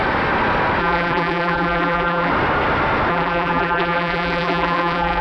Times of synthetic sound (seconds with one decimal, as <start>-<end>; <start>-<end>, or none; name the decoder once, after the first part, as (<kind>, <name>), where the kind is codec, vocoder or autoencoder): 0.8-2.3 (vocoder, BigVGAN v2); 3.1-5.2